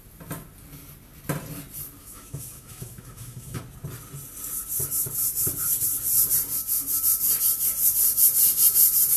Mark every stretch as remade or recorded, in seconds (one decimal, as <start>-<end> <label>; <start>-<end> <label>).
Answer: 0.0-2.0 recorded; 2.0-3.6 remade; 3.6-9.2 recorded

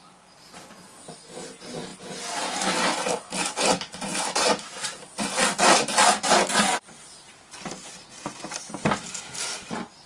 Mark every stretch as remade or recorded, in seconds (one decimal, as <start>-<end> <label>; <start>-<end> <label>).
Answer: 0.0-10.1 recorded

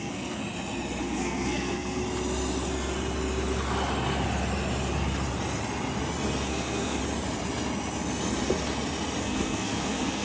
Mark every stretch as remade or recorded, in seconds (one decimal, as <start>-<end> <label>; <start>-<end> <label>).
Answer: 0.0-0.4 remade; 0.4-1.0 recorded; 1.0-2.0 remade; 2.0-6.5 recorded; 6.5-7.0 remade; 7.0-9.2 recorded; 9.2-10.2 remade